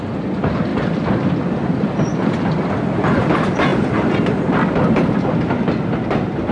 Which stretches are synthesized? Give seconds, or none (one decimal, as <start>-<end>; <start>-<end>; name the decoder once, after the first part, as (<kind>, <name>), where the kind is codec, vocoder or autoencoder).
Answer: 0.0-6.5 (vocoder, BigVGAN v2)